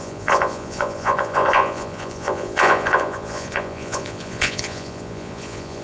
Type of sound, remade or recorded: remade